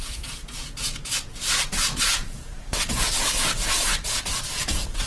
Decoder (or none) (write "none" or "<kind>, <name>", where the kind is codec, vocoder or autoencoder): vocoder, Vocos